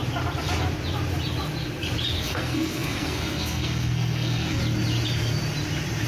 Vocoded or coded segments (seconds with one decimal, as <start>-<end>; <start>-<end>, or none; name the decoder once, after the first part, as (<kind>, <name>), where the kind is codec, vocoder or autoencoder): 2.2-4.6 (codec, SNAC)